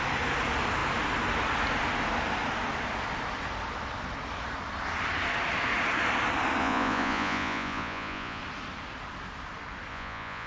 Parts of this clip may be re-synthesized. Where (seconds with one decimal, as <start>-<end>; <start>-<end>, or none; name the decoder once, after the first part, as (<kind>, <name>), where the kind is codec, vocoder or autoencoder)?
6.6-8.4 (vocoder, Vocos); 9.9-10.5